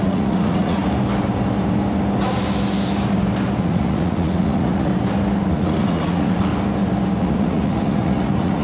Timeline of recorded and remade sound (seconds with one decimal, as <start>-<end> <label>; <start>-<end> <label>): 0.0-0.8 remade; 0.8-3.6 recorded; 3.6-4.9 remade; 4.9-5.5 recorded; 5.5-6.5 remade; 6.5-7.2 recorded; 7.2-8.6 remade